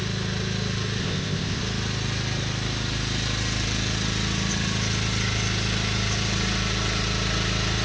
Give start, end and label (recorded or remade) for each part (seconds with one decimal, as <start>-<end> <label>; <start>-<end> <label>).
0.0-1.0 recorded; 1.0-1.6 remade; 1.6-7.8 recorded